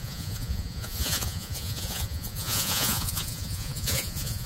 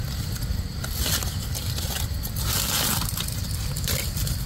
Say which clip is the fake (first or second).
first